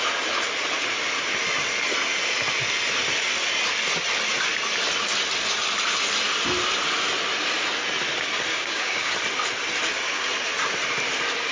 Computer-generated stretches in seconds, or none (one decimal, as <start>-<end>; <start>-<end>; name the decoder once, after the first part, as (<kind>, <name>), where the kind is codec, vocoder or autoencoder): 8.5-9.1 (codec, DAC)